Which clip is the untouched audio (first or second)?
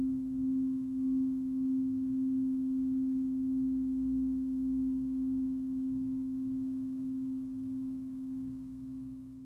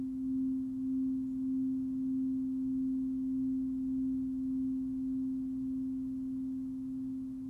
second